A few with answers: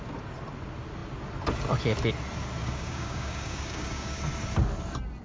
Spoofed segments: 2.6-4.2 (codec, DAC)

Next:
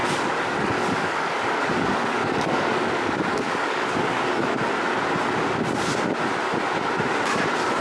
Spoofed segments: 0.0-4.7 (codec, DAC)

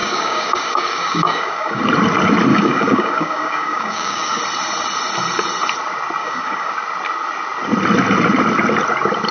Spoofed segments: 0.0-1.8 (codec, DAC); 2.5-4.4; 6.2-6.7

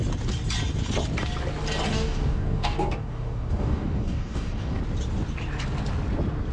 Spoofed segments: 1.9-4.8 (codec, DAC)

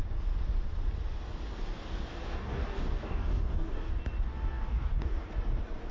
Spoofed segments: 2.1-3.9 (codec, DAC); 4.5-5.3

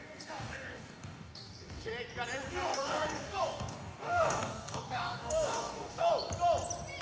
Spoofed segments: 0.0-1.9 (codec, DAC); 2.5-6.1

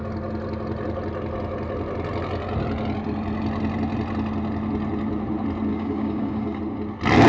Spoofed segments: 5.7-6.6 (codec, DAC)

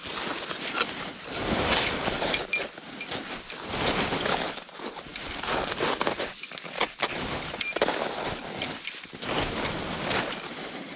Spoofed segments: none